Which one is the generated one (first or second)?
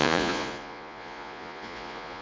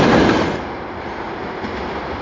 first